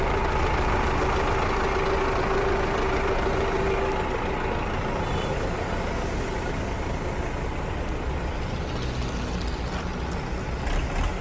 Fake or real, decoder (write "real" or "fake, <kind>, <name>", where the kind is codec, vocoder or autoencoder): real